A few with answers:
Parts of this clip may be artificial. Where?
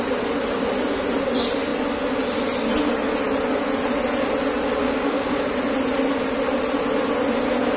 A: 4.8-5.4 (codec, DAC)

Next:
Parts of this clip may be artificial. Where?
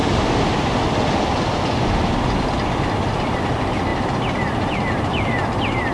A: 3.9-4.9 (vocoder, BigVGAN v2)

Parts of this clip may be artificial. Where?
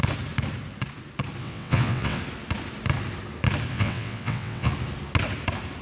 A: 1.4-2.2 (vocoder, WaveNeXt); 3.7-4.7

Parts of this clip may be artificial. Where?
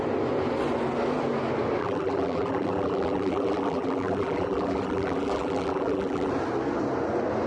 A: 1.8-6.3 (vocoder, BigVGAN v2)